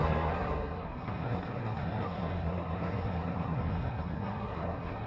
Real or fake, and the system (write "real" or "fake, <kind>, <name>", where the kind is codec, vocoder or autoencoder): fake, codec, SNAC